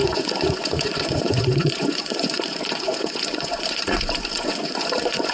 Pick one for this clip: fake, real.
fake